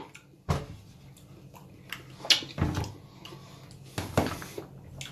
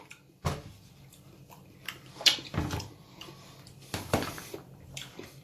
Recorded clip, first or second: first